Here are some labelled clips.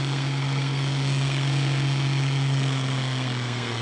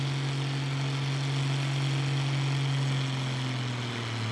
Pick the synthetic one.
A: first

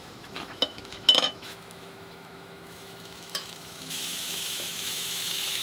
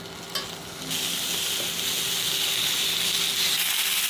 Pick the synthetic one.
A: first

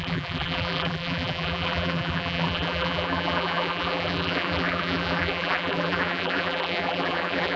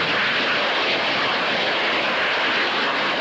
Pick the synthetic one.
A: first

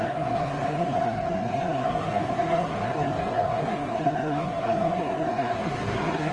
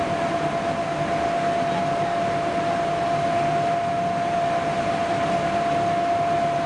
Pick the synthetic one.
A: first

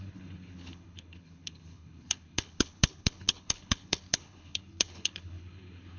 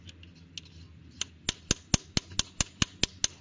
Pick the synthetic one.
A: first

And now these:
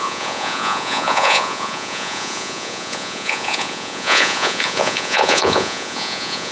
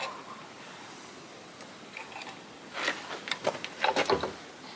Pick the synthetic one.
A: first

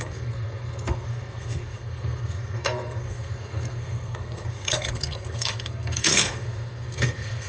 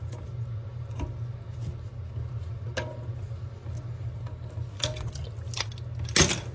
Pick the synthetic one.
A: first